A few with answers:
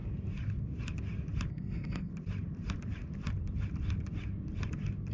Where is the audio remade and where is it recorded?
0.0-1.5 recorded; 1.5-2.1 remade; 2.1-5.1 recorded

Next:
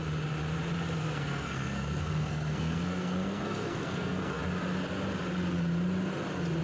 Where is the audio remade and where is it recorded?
0.0-1.0 recorded; 1.0-4.4 remade; 4.4-6.6 recorded

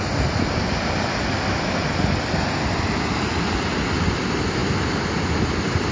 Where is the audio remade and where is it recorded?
0.0-5.9 recorded